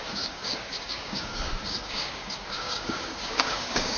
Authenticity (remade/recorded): remade